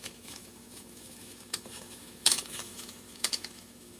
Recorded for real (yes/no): no